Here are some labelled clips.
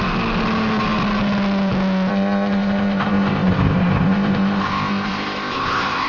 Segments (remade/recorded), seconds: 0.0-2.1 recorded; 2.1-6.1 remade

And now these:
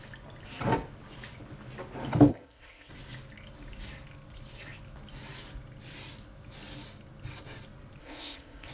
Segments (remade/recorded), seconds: 0.0-2.3 recorded; 2.3-2.9 remade; 2.9-8.0 recorded; 8.0-8.7 remade